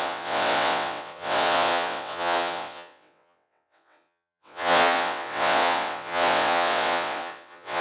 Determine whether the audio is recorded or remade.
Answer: remade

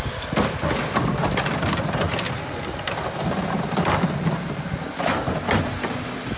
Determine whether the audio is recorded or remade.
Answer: recorded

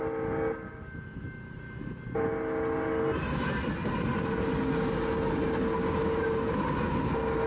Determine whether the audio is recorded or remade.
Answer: recorded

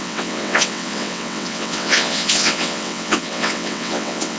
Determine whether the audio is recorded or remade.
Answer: remade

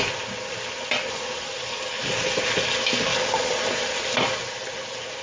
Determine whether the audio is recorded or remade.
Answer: recorded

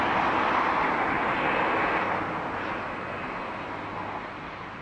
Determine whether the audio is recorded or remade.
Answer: recorded